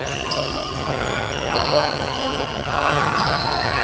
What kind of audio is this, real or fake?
fake